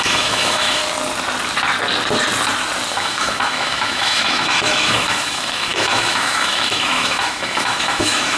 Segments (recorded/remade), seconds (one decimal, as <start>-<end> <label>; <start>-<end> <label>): 0.0-0.8 remade; 0.8-2.9 recorded; 2.9-8.4 remade